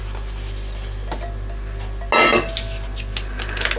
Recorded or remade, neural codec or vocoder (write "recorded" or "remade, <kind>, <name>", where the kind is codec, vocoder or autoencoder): recorded